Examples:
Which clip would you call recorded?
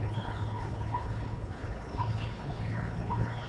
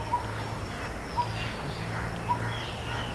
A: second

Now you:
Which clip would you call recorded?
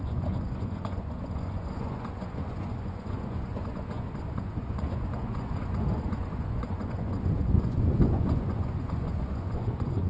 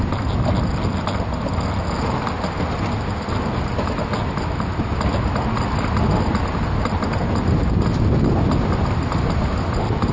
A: second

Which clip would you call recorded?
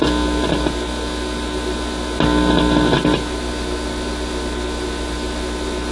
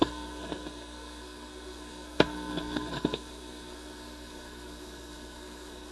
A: first